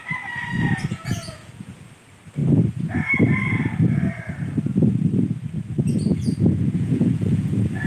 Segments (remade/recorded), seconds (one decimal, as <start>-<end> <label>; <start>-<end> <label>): 0.0-0.9 recorded; 0.9-1.7 remade; 1.7-6.1 recorded; 6.1-7.5 remade; 7.5-7.9 recorded